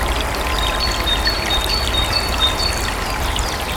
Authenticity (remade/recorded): recorded